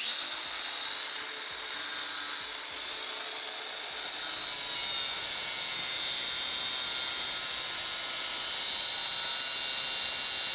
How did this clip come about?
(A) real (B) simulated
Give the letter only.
A